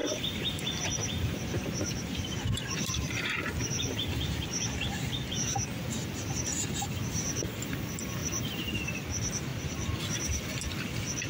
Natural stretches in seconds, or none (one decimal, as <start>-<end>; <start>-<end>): 4.6-8.2; 8.8-11.3